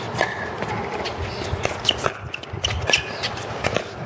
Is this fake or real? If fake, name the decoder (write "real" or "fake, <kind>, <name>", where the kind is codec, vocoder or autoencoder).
real